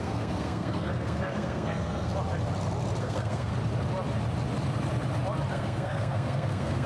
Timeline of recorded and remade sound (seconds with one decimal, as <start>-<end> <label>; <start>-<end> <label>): 0.0-2.1 remade; 2.1-3.0 recorded; 3.0-3.5 remade; 3.5-5.5 recorded; 5.5-6.9 remade